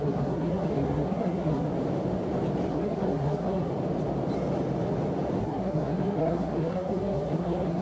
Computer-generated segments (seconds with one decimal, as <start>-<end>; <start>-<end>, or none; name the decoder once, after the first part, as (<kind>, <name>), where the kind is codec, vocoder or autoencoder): 0.0-1.7 (codec, SNAC); 2.7-3.7; 5.4-7.8